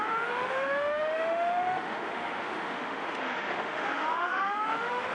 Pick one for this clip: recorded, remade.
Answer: remade